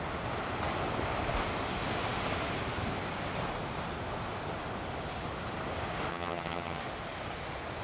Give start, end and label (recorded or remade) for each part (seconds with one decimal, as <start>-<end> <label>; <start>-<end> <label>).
0.0-6.1 recorded; 6.1-6.8 remade; 6.8-7.8 recorded